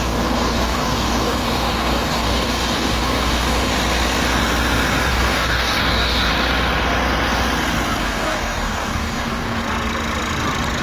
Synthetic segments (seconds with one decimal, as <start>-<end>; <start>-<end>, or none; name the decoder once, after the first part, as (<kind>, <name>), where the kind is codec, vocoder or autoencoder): 0.0-3.7 (codec, DAC); 5.1-6.3; 8.0-9.6